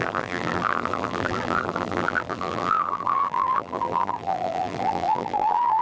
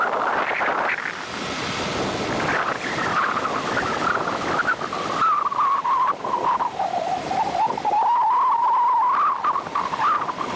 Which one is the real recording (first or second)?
second